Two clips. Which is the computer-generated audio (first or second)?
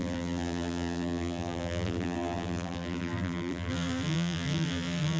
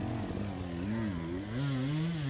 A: first